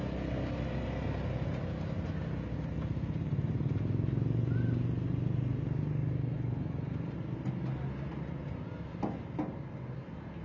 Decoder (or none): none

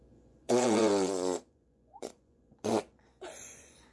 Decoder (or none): vocoder, Vocos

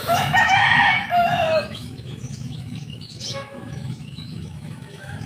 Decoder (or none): autoencoder, DAC-VAE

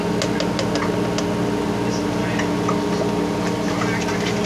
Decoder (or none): none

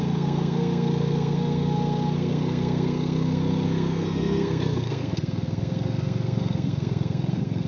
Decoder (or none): codec, SNAC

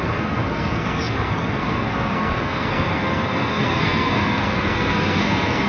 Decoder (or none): codec, SNAC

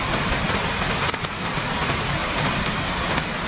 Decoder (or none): none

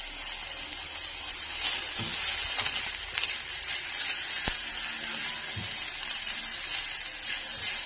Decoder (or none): none